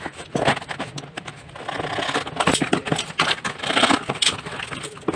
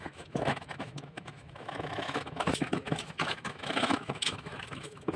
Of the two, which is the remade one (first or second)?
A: second